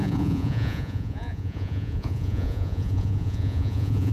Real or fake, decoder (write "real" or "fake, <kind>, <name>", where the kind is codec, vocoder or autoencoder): fake, vocoder, Vocos